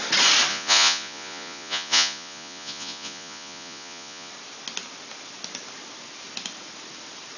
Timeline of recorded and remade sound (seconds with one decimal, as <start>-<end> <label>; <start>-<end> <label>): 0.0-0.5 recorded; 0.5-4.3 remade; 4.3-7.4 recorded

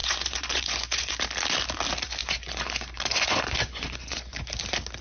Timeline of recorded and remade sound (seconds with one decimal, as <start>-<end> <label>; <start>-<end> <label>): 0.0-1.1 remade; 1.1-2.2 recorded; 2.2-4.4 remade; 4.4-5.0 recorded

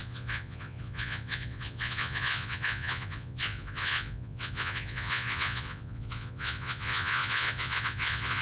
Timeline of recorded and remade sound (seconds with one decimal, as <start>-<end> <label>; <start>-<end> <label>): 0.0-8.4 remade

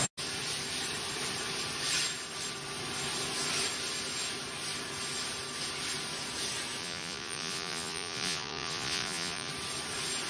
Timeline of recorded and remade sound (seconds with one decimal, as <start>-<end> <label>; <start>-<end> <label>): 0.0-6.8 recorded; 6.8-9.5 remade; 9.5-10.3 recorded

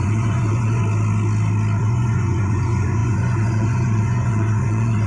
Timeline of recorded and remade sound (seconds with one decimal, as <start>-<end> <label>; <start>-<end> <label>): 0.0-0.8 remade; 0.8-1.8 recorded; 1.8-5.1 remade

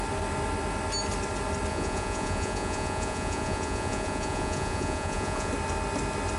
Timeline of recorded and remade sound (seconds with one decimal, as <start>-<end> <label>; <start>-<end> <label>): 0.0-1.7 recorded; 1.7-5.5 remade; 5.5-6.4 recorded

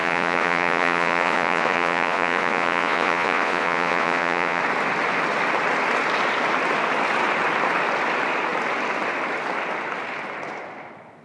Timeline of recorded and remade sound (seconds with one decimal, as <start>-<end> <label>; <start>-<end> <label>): 0.0-4.6 remade; 4.6-11.2 recorded

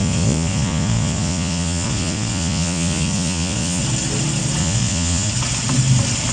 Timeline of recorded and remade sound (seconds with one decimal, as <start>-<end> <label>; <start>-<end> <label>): 0.0-3.8 remade; 3.8-4.6 recorded; 4.6-5.3 remade; 5.3-6.3 recorded